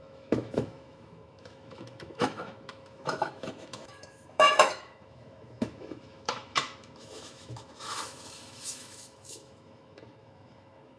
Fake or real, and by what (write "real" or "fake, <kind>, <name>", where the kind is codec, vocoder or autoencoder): fake, autoencoder, DAC-VAE